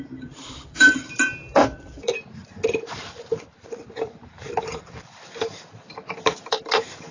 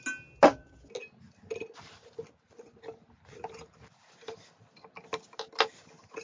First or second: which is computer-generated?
first